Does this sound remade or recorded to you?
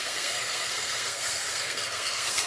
remade